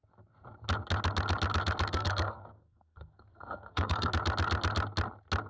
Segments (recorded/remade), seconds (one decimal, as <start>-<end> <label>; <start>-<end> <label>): 0.0-1.9 recorded; 1.9-4.1 remade; 4.1-5.5 recorded